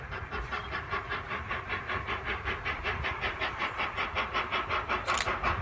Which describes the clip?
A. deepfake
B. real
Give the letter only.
B